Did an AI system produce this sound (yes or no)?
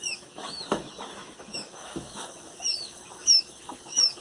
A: yes